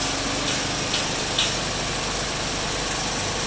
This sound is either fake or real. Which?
real